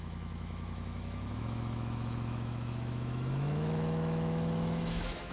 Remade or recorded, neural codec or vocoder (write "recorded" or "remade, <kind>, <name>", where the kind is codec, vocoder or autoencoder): remade, autoencoder, DAC-VAE